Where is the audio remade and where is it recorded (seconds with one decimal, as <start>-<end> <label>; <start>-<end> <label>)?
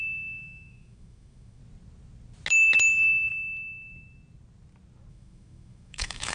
0.0-1.6 remade; 1.6-2.5 recorded; 2.5-3.3 remade; 3.3-5.1 recorded; 5.1-6.3 remade